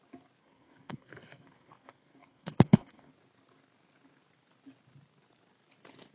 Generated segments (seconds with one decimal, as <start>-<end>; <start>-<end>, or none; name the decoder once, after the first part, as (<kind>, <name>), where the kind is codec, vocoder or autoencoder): 0.4-3.1 (codec, SNAC)